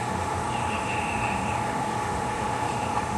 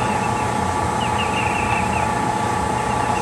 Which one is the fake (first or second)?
first